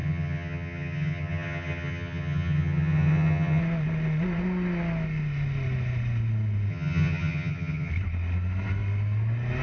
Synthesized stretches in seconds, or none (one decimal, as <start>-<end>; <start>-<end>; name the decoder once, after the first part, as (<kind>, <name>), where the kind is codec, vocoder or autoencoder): 0.0-3.6 (vocoder, HiFi-GAN); 6.7-7.9

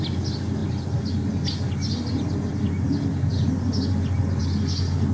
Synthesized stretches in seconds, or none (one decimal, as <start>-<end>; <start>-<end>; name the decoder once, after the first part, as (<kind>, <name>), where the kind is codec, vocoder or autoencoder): none

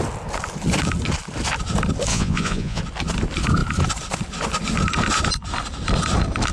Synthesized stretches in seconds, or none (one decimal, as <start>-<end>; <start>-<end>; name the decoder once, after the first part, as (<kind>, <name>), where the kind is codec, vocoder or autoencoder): 2.1-2.8 (vocoder, Vocos)

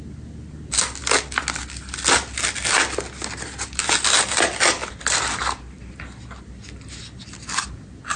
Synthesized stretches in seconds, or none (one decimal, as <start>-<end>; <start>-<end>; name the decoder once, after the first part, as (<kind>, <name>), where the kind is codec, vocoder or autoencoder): none

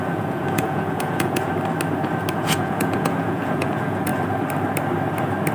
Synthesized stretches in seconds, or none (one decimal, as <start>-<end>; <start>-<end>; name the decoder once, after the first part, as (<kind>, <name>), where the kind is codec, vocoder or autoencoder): 0.0-1.5 (vocoder, Vocos); 2.3-4.1